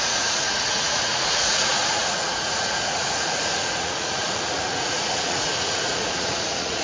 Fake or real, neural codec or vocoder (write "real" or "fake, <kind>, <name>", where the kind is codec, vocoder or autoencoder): fake, vocoder, Vocos